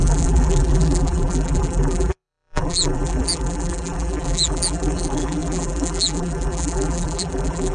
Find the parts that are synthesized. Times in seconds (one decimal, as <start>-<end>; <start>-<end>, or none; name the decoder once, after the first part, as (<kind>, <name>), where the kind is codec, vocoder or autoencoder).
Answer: 0.0-7.7 (vocoder, BigVGAN v2)